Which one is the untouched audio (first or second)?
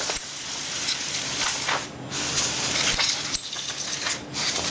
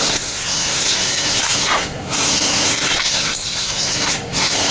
first